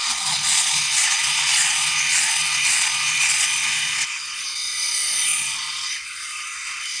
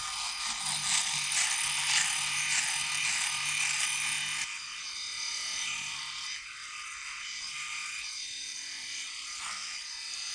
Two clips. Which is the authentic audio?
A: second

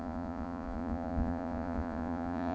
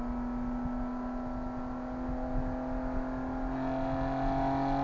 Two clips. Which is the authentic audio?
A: second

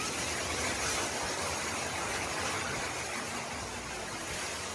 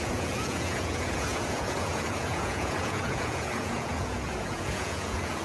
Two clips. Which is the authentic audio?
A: first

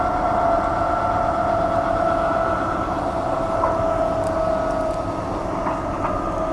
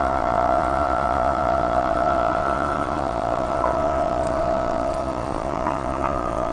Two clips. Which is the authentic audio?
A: first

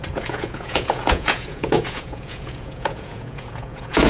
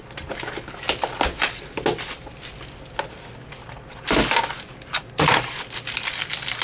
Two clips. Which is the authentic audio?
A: second